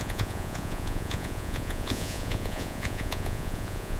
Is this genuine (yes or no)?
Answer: no